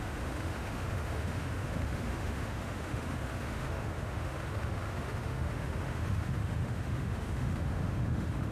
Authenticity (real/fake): fake